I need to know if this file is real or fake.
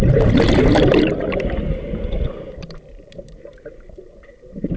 fake